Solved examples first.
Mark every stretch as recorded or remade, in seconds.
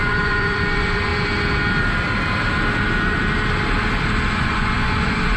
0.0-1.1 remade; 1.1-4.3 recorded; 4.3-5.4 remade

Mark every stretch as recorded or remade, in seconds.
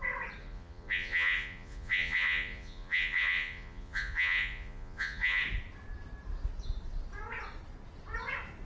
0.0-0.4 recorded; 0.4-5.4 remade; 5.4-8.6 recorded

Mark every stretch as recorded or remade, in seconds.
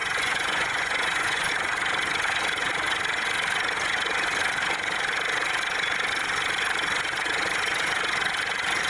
0.0-1.5 remade; 1.5-8.9 recorded